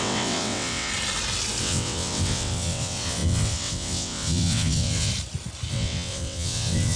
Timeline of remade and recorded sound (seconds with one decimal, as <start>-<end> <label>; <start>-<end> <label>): 0.0-0.9 remade; 0.9-1.6 recorded; 1.6-5.1 remade; 5.1-5.7 recorded; 5.7-7.0 remade